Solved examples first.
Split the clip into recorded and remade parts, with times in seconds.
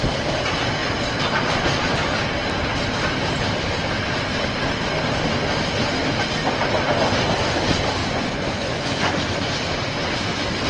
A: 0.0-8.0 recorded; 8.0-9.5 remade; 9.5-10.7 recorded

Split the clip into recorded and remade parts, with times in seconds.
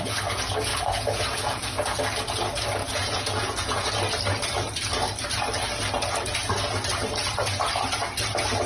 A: 0.0-0.7 recorded; 0.7-2.0 remade; 2.0-2.8 recorded; 2.8-3.9 remade; 3.9-8.7 recorded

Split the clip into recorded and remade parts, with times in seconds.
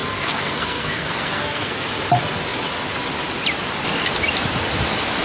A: 0.0-1.9 remade; 1.9-5.2 recorded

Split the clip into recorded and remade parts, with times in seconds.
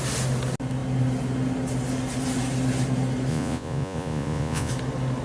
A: 0.0-3.3 recorded; 3.3-4.7 remade; 4.7-5.2 recorded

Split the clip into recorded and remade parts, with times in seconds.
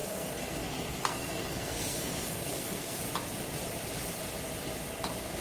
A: 0.0-3.0 remade; 3.0-5.4 recorded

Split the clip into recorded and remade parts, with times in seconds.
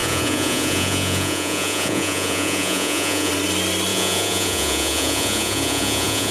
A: 0.0-3.3 remade; 3.3-3.9 recorded; 3.9-6.3 remade